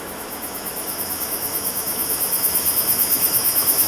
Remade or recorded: remade